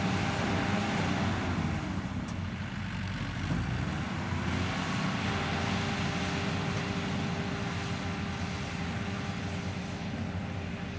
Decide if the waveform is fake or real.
real